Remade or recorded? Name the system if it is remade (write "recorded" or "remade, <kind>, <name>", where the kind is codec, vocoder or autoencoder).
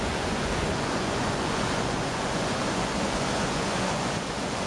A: remade, vocoder, Vocos